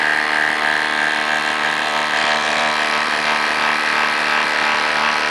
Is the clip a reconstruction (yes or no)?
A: yes